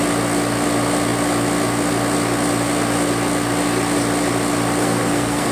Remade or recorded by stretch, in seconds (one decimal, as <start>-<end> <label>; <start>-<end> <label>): 0.0-4.8 recorded; 4.8-5.5 remade